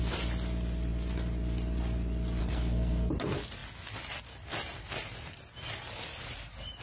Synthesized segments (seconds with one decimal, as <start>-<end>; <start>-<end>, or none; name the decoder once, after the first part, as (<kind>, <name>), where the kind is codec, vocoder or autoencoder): 2.4-3.1 (codec, SNAC)